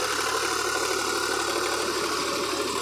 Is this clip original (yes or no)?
yes